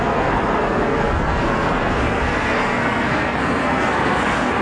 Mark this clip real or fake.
fake